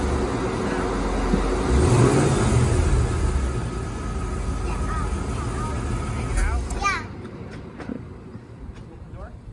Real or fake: real